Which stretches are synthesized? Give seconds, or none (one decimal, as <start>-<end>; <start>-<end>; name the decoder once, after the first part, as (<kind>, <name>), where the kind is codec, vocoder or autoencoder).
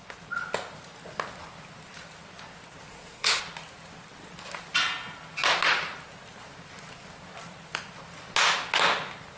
2.9-3.4 (codec, SNAC)